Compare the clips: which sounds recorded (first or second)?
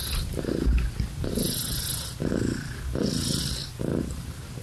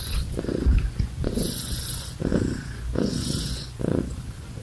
first